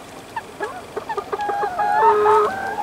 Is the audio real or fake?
real